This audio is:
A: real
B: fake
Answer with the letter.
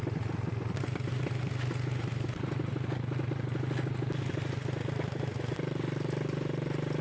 A